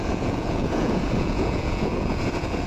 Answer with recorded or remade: remade